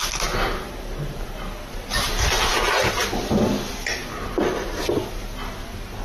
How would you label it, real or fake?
real